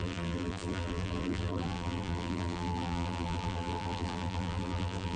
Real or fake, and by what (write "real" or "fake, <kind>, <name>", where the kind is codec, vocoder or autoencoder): fake, vocoder, BigVGAN v2